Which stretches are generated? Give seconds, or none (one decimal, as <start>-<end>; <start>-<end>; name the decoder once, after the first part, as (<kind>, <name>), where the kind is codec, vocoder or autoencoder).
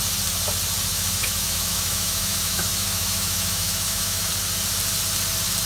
0.9-4.3 (autoencoder, DAC-VAE)